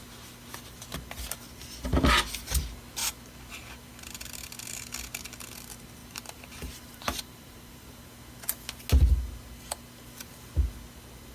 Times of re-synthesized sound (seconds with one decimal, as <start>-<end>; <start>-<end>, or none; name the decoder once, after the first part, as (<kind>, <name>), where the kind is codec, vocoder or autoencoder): 6.0-8.1 (vocoder, BigVGAN v2)